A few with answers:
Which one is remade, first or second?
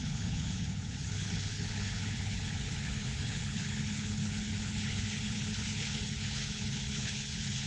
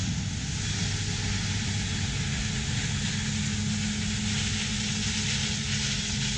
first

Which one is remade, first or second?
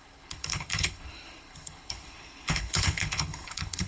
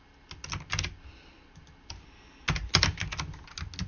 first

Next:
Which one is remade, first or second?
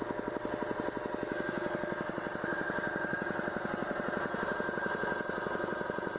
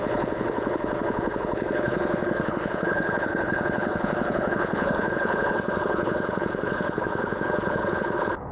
second